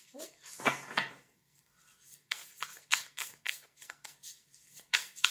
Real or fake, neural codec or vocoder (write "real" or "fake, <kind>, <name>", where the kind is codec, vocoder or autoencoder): fake, codec, SNAC